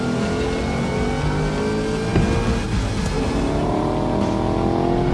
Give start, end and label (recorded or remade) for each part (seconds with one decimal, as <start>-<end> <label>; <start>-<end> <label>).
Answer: 0.0-5.1 recorded